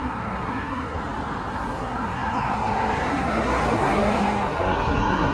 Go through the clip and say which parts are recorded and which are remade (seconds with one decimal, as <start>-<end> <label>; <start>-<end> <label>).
0.0-1.0 remade; 1.0-1.5 recorded; 1.5-5.3 remade